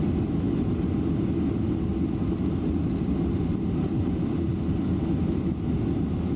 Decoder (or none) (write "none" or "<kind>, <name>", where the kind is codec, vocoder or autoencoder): none